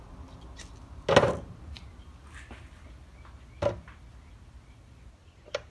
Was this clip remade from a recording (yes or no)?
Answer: no